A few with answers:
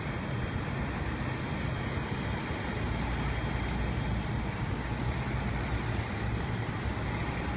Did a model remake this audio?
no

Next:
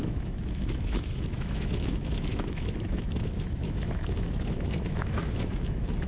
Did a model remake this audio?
yes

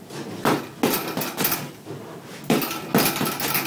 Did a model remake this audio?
no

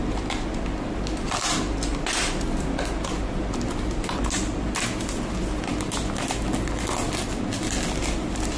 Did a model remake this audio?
no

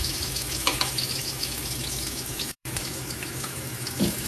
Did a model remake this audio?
yes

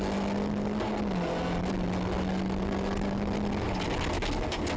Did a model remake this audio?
no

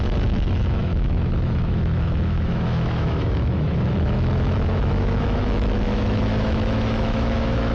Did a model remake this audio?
yes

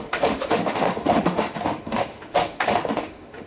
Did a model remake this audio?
yes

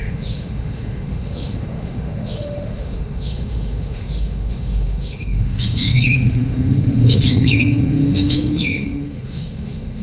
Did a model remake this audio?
yes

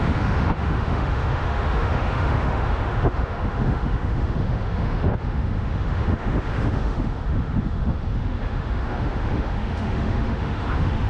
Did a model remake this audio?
yes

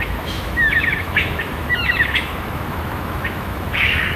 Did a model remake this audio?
yes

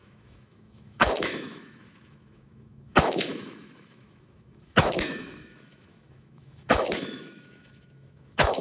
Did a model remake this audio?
yes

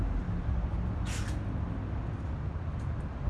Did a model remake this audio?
no